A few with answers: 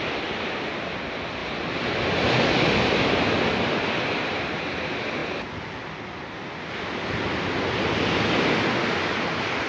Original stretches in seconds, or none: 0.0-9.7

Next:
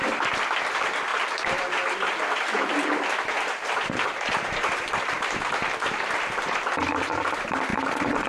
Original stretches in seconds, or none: 0.0-1.1; 6.1-7.7

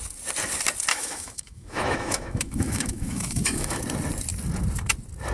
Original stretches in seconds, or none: 0.0-0.9; 3.8-5.3